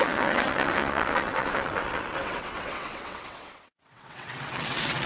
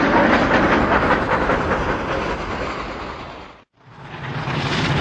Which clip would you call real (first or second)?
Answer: second